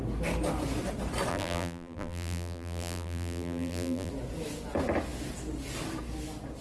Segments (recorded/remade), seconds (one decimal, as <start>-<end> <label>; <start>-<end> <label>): 0.0-1.3 recorded; 1.3-4.1 remade; 4.1-6.6 recorded